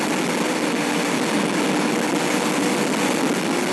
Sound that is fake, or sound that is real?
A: real